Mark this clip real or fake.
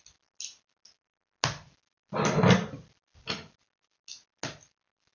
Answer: real